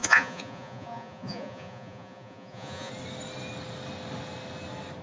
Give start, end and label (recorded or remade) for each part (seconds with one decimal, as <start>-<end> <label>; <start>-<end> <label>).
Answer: 0.0-2.9 remade; 2.9-5.0 recorded